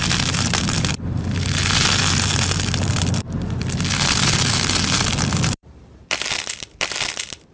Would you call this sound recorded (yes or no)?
no